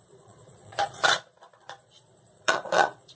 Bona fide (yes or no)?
no